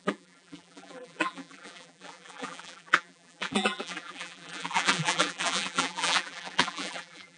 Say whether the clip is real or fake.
fake